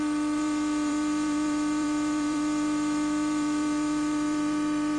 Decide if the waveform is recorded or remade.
remade